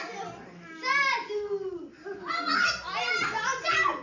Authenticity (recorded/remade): recorded